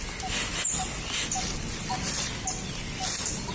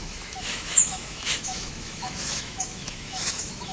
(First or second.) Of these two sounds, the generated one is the second